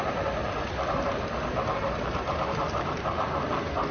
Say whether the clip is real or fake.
fake